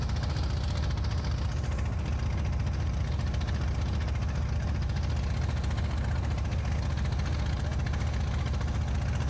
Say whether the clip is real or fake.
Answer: real